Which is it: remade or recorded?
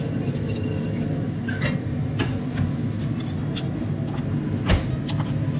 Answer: recorded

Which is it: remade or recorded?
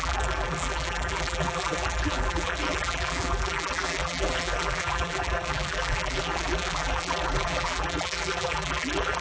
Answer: remade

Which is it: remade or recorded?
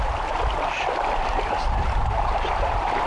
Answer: recorded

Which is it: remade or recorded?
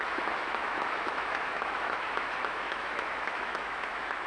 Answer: remade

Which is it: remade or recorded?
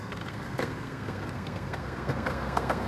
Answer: remade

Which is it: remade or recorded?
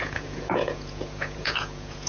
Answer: remade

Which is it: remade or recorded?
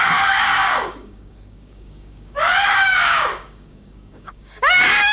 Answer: remade